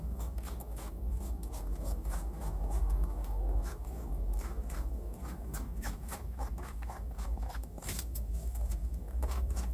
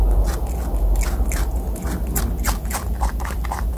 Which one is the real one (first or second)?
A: second